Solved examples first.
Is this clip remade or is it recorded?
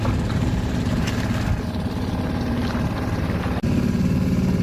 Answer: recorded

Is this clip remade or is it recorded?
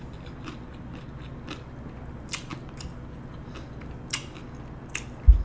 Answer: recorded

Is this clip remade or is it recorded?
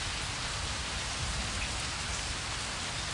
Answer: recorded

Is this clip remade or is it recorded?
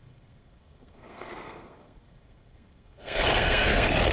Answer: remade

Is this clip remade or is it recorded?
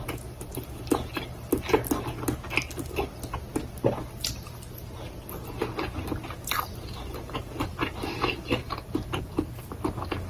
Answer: recorded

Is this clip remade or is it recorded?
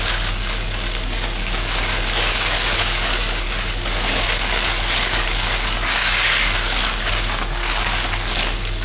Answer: remade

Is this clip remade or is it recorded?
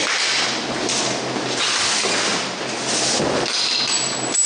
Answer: recorded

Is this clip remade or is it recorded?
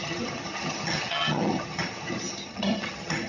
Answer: remade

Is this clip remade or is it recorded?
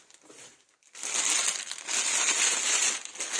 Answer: recorded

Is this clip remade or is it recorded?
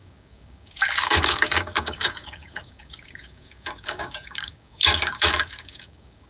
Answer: remade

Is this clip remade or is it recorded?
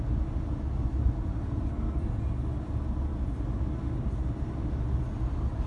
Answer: recorded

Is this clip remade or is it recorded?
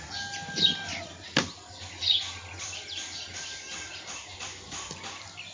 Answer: recorded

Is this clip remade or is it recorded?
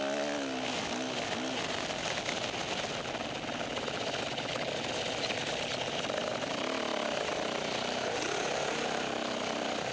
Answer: recorded